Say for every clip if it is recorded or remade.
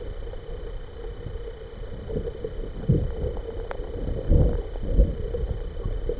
recorded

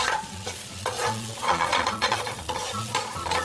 remade